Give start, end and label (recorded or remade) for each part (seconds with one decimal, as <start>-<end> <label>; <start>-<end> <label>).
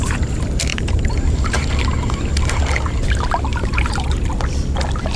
0.0-0.7 recorded; 0.7-1.7 remade; 1.7-3.5 recorded; 3.5-4.4 remade; 4.4-5.2 recorded